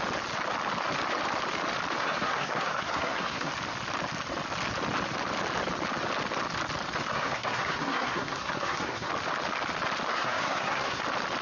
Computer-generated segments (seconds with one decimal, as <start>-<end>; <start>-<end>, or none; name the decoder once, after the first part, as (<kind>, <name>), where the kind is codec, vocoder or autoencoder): 2.0-3.5 (codec, SNAC); 7.1-9.1; 10.1-11.0